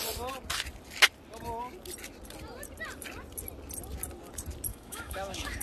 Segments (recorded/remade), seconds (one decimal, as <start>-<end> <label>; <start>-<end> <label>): 0.0-4.7 recorded; 4.7-5.6 remade